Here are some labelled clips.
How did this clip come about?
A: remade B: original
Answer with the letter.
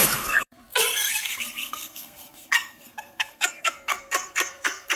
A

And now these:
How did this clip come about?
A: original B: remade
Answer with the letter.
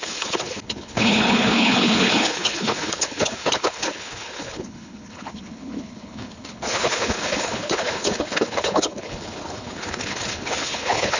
B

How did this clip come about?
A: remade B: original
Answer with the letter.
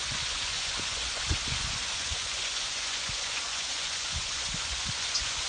A